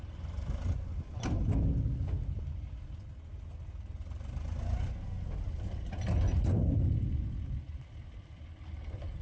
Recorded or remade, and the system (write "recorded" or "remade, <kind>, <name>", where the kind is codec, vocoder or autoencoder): recorded